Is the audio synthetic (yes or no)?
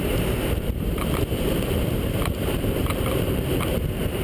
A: yes